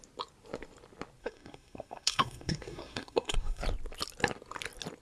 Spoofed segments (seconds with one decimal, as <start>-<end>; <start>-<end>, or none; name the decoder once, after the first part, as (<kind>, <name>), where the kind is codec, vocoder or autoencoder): 1.2-3.6 (codec, SNAC)